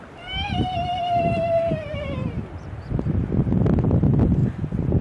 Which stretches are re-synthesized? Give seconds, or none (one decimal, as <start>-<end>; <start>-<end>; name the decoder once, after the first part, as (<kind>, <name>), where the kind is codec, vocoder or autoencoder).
none